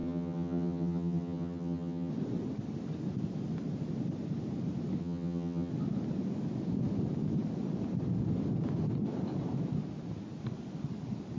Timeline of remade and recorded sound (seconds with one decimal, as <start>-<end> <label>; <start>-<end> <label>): 0.0-2.1 remade; 2.1-5.0 recorded; 5.0-5.7 remade; 5.7-11.4 recorded